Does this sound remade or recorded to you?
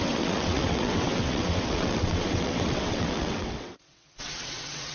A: remade